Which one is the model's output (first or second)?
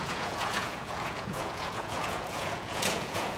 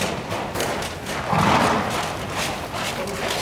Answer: first